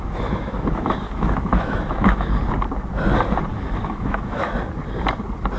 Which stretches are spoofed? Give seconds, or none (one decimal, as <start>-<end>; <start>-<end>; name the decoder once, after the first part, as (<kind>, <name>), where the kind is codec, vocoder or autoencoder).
0.0-2.3 (autoencoder, DAC-VAE); 3.5-4.5